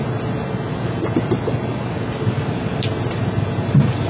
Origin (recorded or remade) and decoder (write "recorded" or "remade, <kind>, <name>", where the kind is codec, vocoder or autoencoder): recorded